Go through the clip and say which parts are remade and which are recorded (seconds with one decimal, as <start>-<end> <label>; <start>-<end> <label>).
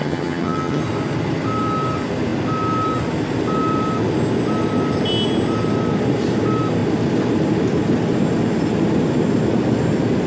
0.0-0.8 remade; 0.8-10.3 recorded